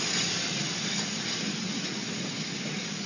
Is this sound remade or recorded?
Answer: recorded